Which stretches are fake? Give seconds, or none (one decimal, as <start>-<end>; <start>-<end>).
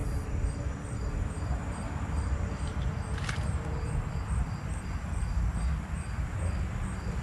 0.0-4.1